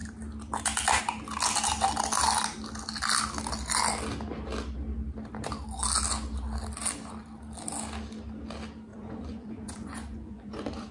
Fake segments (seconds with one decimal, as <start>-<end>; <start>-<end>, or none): 8.9-10.9